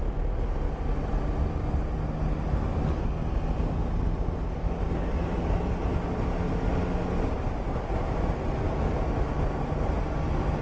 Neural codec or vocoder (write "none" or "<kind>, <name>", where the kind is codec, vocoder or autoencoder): none